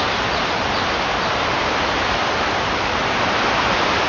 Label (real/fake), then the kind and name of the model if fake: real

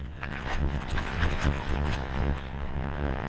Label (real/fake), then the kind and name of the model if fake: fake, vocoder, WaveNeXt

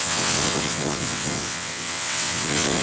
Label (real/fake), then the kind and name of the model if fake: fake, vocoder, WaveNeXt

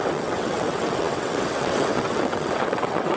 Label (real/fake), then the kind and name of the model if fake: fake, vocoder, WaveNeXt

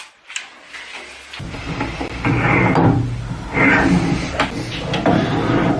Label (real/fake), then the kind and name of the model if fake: real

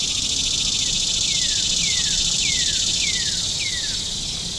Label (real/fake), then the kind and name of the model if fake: real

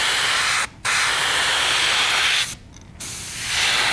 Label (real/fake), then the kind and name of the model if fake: real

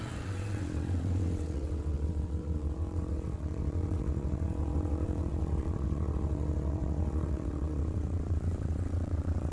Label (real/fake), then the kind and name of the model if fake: fake, vocoder, WaveNeXt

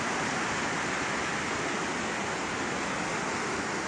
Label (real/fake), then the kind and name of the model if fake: real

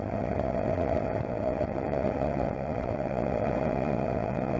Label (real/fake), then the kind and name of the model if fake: fake, vocoder, WaveNeXt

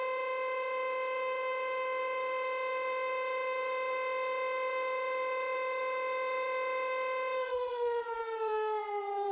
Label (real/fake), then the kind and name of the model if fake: fake, vocoder, WaveNeXt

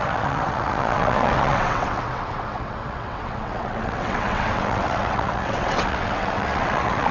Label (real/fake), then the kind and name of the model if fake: fake, vocoder, WaveNeXt